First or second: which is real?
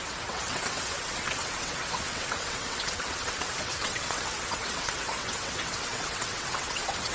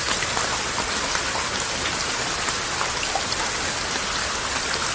second